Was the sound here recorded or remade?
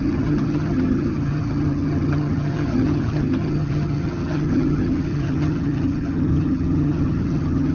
remade